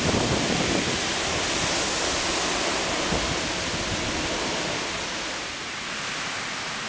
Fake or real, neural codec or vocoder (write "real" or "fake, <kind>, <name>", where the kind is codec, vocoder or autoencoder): real